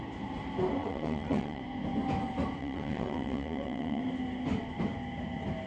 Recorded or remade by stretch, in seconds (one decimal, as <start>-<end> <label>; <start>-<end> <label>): 0.0-0.8 recorded; 0.8-1.6 remade; 1.6-2.6 recorded; 2.6-4.0 remade; 4.0-5.7 recorded